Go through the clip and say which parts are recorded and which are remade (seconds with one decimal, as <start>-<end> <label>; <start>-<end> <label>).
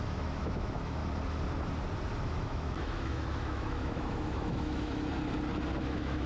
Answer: 0.0-1.0 remade; 1.0-2.2 recorded; 2.2-5.1 remade; 5.1-5.8 recorded; 5.8-6.3 remade